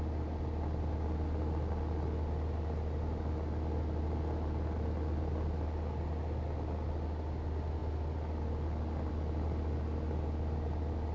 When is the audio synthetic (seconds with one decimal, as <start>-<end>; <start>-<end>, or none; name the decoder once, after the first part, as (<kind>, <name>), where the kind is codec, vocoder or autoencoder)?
none